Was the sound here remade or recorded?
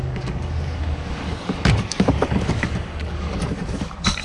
remade